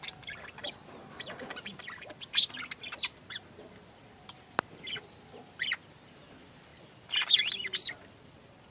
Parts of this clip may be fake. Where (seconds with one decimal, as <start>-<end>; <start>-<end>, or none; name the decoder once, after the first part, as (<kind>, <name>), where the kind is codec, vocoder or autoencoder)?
none